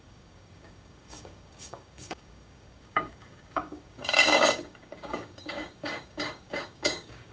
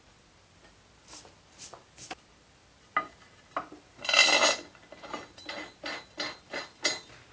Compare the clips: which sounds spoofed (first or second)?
first